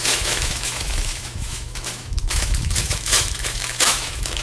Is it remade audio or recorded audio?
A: remade